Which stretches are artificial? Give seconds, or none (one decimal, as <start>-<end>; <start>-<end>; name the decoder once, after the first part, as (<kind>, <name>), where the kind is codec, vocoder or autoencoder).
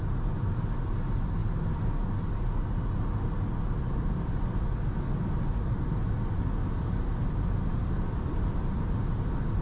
none